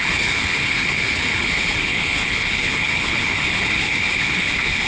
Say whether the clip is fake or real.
fake